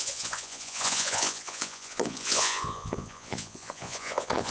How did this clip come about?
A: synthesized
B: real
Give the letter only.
A